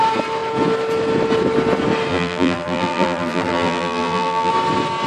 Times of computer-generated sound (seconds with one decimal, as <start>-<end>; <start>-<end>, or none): 2.1-4.5